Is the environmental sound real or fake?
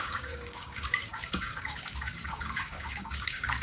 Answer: fake